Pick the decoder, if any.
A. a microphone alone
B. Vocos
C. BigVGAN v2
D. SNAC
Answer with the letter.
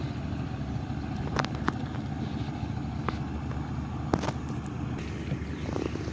A